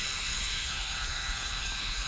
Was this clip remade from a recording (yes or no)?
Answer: yes